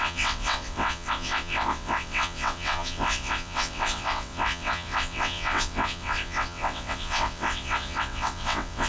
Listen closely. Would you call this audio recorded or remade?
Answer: remade